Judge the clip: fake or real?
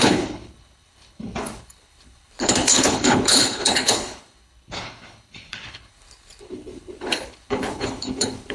fake